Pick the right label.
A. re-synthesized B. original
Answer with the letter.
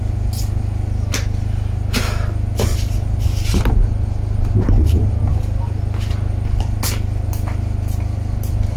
B